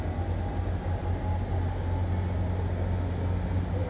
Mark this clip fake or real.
real